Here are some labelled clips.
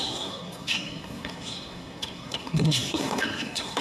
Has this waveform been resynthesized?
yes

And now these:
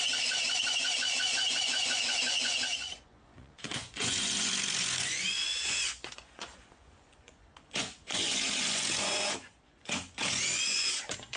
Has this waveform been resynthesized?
yes